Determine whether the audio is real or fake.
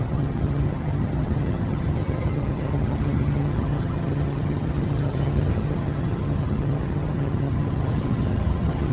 fake